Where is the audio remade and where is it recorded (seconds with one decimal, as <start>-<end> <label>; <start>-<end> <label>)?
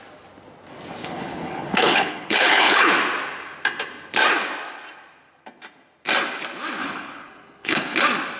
0.0-1.0 recorded; 1.0-2.9 remade; 2.9-6.8 recorded; 6.8-8.0 remade; 8.0-8.4 recorded